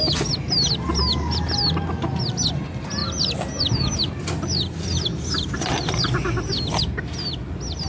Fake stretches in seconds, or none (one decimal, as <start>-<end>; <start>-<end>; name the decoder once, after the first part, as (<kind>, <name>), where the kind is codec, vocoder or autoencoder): none

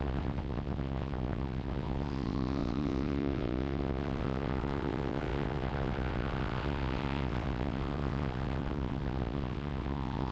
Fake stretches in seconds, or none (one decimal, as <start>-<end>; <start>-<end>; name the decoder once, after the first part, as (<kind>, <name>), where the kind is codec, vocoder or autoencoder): 0.0-10.3 (vocoder, WaveNeXt)

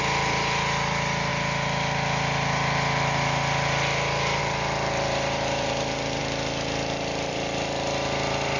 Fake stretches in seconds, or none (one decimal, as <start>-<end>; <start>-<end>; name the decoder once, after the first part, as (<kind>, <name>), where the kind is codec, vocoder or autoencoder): 0.0-1.3 (vocoder, BigVGAN v2); 4.4-6.2; 7.3-8.6

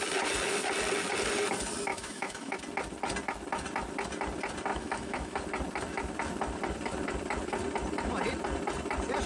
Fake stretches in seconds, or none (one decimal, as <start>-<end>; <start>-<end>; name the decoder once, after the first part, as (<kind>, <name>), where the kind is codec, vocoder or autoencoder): 1.9-2.6 (autoencoder, DAC-VAE); 4.7-5.4